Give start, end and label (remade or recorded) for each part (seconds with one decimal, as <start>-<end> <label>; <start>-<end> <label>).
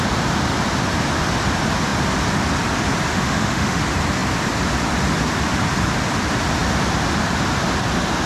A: 0.0-3.1 recorded; 3.1-3.8 remade; 3.8-8.3 recorded